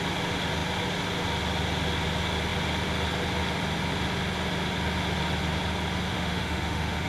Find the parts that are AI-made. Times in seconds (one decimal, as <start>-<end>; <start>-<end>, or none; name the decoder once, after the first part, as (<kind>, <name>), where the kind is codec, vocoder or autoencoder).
6.1-7.1 (autoencoder, DAC-VAE)